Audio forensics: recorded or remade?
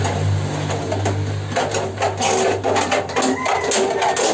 recorded